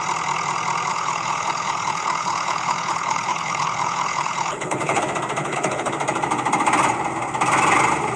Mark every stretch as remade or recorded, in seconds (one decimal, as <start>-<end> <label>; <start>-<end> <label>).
0.0-0.9 recorded; 0.9-5.0 remade; 5.0-5.4 recorded; 5.4-5.9 remade; 5.9-8.2 recorded